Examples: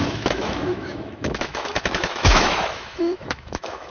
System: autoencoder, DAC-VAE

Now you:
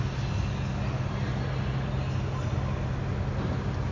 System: none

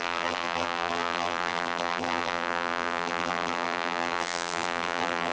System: vocoder, BigVGAN v2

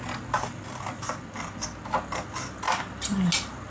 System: none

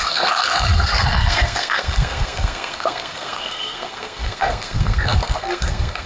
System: codec, SNAC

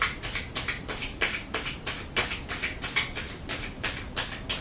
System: none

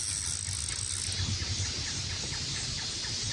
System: none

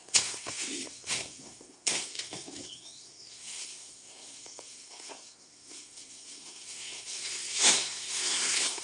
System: codec, SNAC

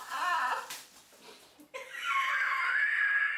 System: none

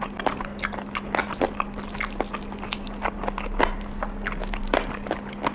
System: none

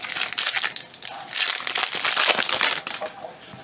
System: none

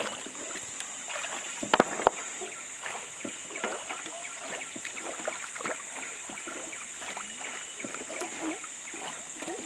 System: none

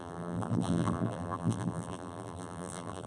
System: vocoder, BigVGAN v2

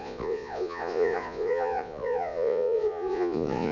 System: vocoder, Vocos